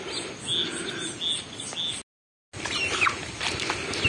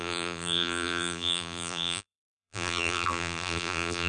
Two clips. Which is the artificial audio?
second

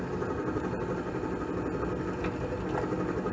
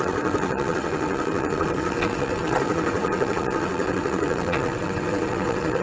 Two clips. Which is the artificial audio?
second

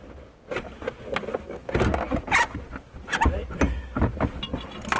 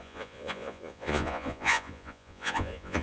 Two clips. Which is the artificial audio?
second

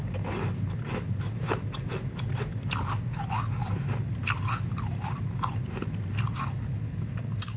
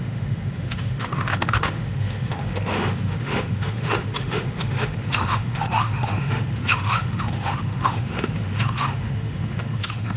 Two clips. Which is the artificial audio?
second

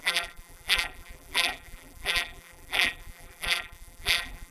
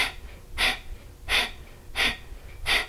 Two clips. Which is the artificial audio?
first